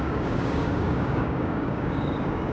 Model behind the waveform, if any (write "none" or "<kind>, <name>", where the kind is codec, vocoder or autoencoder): codec, DAC